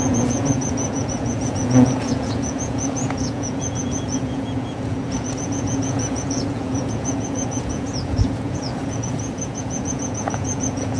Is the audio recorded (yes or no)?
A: no